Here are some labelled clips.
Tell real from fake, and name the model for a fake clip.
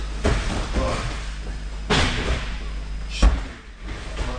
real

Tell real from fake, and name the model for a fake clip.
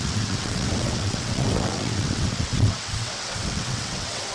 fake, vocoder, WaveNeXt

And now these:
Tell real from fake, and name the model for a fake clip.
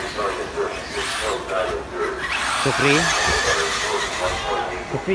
real